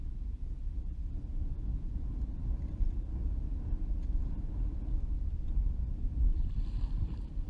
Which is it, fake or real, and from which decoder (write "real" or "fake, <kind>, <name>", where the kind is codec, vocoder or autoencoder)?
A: fake, vocoder, BigVGAN v2